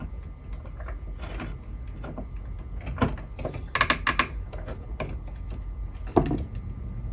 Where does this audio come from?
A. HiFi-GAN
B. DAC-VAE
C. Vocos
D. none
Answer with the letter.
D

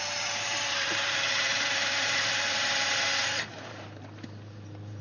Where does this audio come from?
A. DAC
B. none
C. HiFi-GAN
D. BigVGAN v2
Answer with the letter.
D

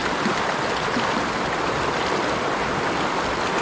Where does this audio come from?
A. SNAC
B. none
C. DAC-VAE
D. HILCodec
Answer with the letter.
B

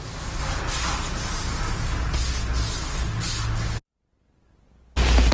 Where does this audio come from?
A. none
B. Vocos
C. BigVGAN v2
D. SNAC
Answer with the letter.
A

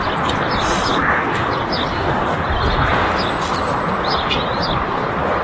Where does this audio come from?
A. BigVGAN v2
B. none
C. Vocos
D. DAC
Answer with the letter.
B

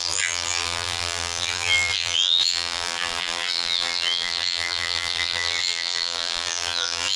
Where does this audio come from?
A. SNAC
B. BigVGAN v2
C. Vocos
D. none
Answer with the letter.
B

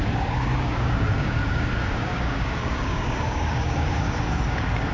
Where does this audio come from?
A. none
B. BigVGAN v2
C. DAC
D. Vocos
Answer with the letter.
C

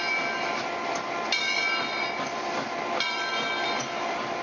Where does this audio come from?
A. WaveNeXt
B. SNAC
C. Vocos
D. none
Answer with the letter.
D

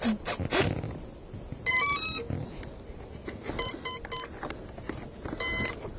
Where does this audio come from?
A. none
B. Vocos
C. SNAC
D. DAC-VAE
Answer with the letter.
A